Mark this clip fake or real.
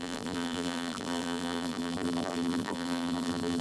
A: fake